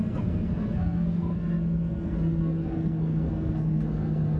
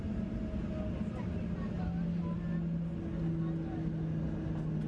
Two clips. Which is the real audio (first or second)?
second